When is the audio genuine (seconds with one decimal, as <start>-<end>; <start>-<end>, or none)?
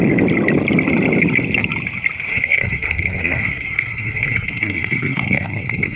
0.0-2.3